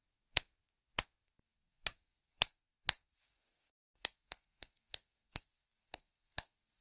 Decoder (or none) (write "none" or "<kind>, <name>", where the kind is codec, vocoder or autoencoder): codec, SNAC